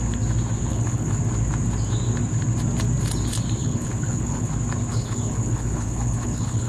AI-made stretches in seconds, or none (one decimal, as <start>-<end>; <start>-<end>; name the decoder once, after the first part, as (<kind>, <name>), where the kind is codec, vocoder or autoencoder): 0.7-1.2 (codec, HILCodec); 3.6-4.5; 4.9-6.7